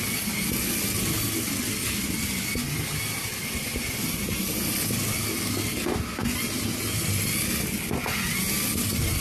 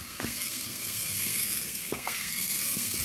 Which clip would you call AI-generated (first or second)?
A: second